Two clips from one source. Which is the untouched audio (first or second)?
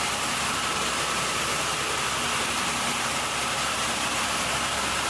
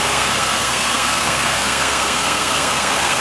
first